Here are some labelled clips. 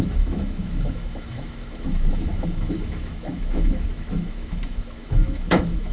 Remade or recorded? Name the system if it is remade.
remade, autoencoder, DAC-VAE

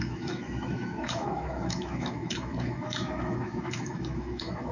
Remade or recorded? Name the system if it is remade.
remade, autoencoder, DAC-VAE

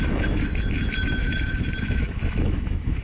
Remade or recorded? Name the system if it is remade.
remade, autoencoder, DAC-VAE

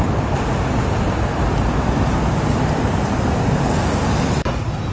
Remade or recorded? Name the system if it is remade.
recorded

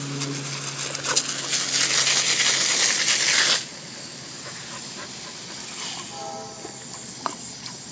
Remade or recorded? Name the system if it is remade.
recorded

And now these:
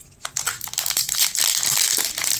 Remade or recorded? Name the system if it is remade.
recorded